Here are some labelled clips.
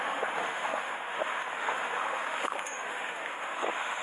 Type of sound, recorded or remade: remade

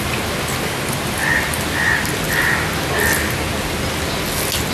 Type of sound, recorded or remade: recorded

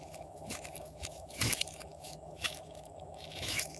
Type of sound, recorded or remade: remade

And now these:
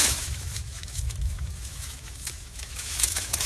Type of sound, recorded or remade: remade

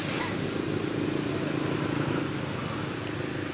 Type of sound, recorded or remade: recorded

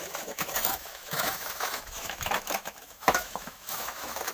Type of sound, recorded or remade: remade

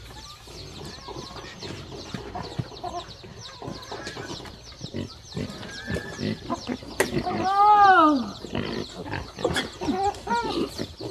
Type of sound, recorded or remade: recorded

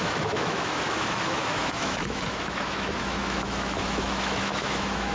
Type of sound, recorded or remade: remade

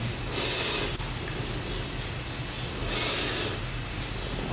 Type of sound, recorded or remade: recorded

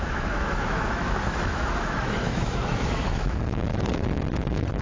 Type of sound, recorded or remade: remade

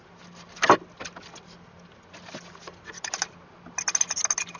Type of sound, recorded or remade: recorded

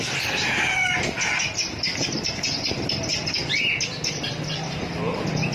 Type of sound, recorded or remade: recorded